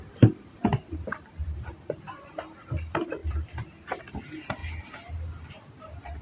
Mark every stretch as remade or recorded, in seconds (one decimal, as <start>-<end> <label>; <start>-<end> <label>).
0.0-0.6 remade; 0.6-1.7 recorded; 1.7-4.6 remade; 4.6-5.4 recorded; 5.4-6.2 remade